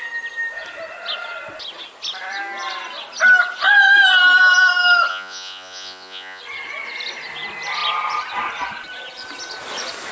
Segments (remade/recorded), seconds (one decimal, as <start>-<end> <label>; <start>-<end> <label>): 0.0-5.1 recorded; 5.1-6.4 remade; 6.4-10.1 recorded